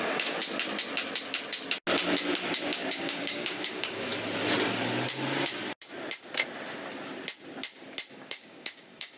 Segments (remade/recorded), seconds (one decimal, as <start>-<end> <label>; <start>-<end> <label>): 0.0-0.4 remade; 0.4-3.0 recorded; 3.0-4.1 remade; 4.1-8.1 recorded; 8.1-9.2 remade